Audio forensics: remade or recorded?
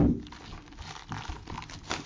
recorded